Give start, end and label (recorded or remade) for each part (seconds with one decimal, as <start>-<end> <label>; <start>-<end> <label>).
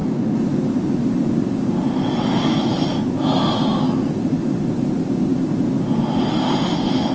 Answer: 0.0-7.1 recorded